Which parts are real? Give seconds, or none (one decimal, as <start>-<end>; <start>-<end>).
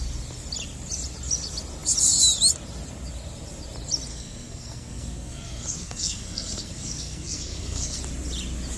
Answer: 0.0-4.1; 8.0-8.8